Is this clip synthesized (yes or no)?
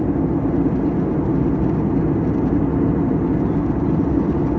no